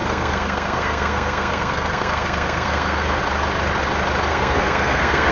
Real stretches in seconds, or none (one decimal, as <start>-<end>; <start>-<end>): 3.2-4.3